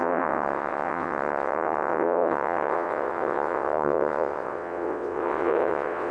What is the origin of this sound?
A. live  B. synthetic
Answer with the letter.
B